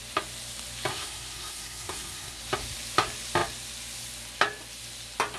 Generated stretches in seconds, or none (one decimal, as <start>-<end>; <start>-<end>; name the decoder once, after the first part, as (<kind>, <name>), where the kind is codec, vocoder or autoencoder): 0.9-2.4 (codec, SNAC)